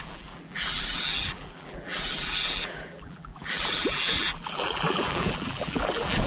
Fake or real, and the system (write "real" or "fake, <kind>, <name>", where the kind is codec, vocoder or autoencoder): fake, vocoder, BigVGAN v2